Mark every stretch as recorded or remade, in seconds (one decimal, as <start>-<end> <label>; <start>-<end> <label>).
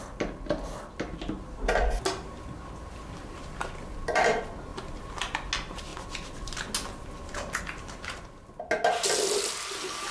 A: 0.0-10.1 recorded